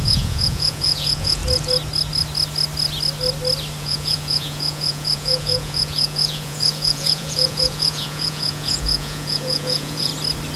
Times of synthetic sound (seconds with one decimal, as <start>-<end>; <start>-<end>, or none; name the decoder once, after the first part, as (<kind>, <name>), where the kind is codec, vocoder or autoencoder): 0.0-1.4 (vocoder, Vocos); 3.8-10.1